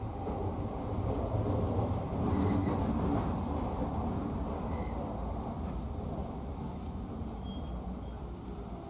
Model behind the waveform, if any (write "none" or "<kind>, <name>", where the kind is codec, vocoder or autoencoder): none